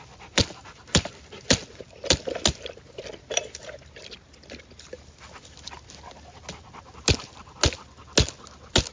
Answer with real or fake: real